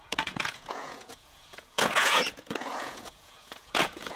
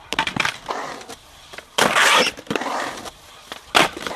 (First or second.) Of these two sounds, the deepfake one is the first